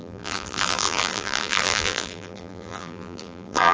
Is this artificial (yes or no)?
yes